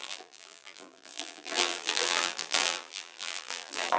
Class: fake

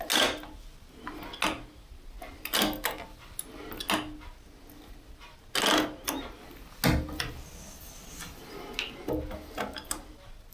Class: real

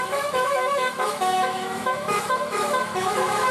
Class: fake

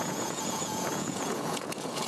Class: fake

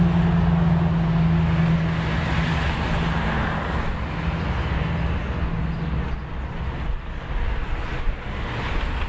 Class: real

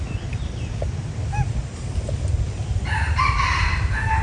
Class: real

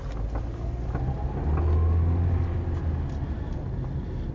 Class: real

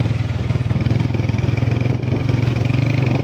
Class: real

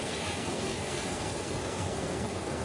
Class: fake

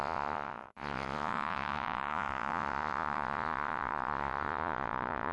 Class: fake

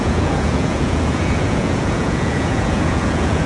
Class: fake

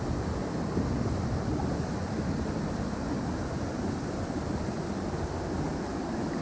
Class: real